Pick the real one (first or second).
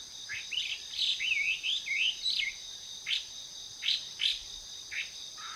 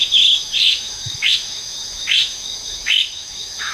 first